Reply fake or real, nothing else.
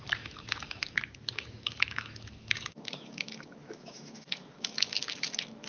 fake